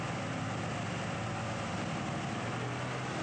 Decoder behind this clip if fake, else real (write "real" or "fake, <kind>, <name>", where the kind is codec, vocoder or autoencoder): real